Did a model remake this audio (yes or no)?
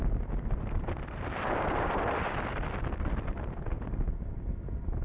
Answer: no